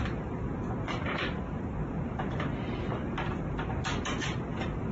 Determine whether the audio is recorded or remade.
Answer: remade